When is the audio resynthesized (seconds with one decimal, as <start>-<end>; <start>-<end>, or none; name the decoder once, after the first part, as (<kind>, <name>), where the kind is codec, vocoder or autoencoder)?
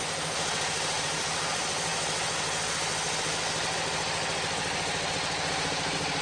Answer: 0.0-1.9 (vocoder, BigVGAN v2); 5.5-6.2